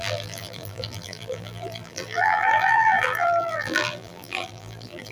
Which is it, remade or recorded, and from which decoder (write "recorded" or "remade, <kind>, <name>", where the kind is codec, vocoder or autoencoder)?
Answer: remade, vocoder, BigVGAN v2